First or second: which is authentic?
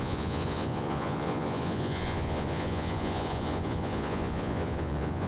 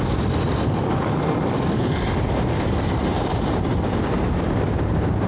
second